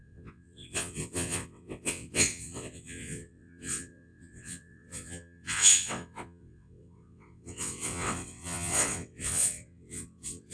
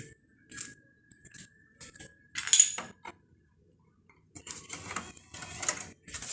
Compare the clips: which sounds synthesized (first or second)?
first